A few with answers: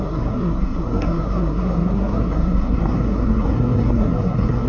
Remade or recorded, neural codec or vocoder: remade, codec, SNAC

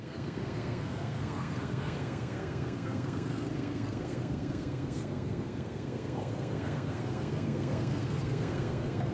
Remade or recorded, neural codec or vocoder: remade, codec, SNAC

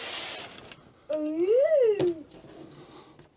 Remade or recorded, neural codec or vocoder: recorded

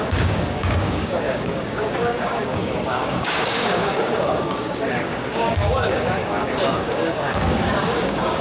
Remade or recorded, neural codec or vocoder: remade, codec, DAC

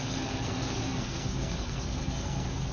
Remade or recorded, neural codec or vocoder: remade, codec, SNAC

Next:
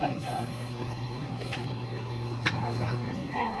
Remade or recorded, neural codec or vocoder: remade, codec, SNAC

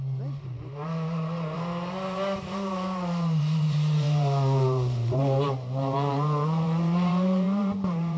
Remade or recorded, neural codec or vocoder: remade, vocoder, BigVGAN v2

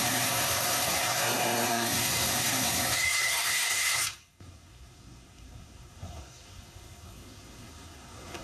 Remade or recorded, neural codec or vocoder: remade, codec, SNAC